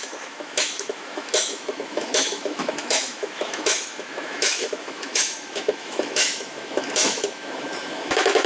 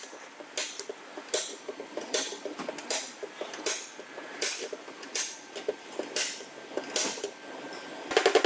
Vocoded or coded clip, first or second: first